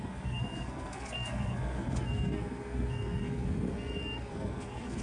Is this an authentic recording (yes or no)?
no